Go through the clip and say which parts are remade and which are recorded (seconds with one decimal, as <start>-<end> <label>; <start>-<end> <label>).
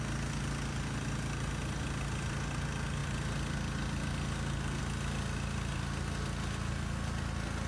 0.0-7.7 recorded